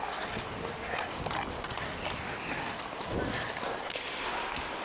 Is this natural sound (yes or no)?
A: yes